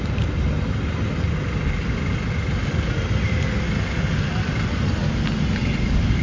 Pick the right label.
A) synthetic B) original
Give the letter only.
B